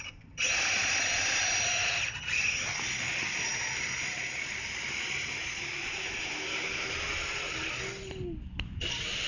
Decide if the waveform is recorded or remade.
recorded